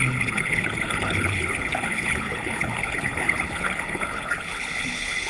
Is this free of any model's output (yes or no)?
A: no